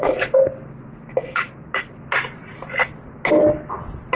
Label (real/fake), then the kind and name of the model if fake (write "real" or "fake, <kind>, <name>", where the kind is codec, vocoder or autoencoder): real